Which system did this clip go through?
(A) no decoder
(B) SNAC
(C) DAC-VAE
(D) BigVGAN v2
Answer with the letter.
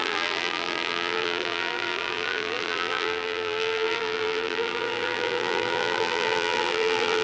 D